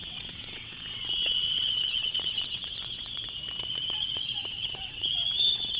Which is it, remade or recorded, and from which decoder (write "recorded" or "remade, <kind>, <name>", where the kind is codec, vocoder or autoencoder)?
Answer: remade, vocoder, WaveNeXt